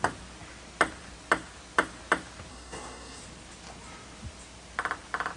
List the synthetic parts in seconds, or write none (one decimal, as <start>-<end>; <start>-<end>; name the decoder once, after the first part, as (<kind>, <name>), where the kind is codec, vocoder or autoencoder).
2.5-3.2 (codec, SNAC)